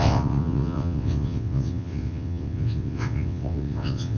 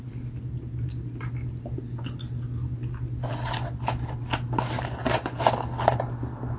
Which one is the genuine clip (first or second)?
second